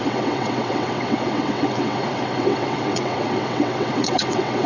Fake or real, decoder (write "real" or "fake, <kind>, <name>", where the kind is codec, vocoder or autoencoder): fake, vocoder, WaveNeXt